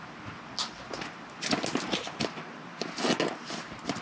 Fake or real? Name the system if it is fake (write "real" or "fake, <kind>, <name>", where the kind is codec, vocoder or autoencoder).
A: real